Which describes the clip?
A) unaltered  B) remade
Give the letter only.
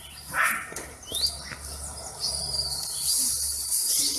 A